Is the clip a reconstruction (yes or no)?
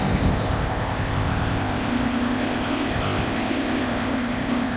yes